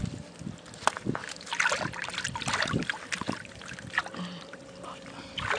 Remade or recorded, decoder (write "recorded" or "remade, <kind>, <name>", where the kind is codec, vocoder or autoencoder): recorded